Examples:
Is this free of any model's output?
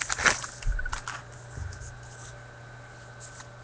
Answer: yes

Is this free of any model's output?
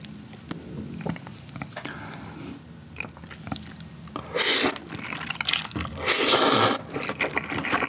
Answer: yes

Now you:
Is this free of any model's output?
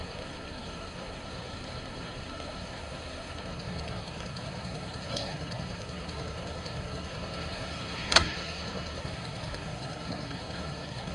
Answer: no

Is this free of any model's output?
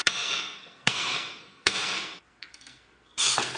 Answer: no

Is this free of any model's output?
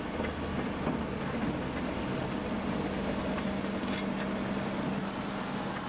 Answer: yes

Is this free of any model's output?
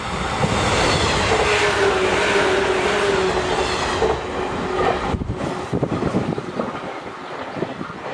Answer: yes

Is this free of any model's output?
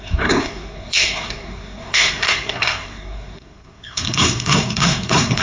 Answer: no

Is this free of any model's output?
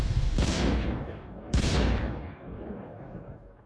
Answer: no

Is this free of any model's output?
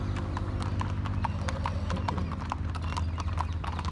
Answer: yes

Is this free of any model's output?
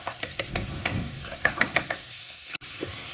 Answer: no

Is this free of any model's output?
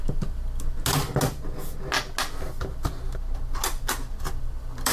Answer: yes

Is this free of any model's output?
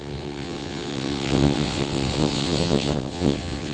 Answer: no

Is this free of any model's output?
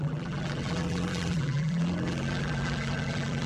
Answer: no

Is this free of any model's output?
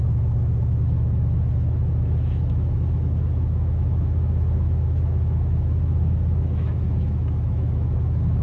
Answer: no